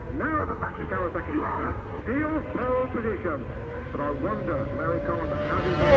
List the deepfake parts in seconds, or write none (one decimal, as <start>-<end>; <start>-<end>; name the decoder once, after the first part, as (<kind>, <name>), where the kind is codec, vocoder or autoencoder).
0.4-0.9 (codec, SNAC); 1.3-2.0